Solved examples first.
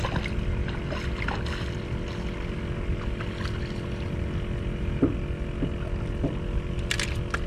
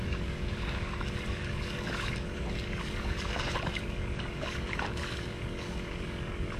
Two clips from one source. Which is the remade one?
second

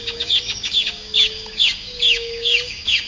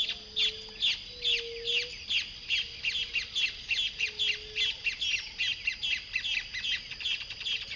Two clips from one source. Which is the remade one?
first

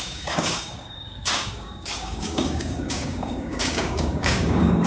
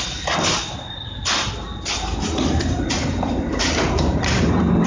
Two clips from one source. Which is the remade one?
first